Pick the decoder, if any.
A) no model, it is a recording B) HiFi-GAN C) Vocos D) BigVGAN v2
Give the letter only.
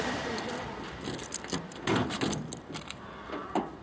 D